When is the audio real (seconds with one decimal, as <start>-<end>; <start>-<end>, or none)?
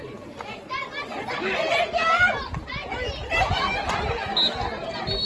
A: 0.0-5.3